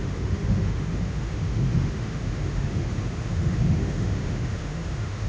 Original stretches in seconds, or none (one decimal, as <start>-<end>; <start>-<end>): none